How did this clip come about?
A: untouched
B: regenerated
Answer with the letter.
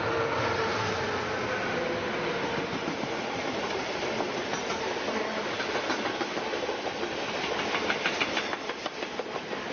A